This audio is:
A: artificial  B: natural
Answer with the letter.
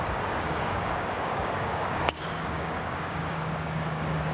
A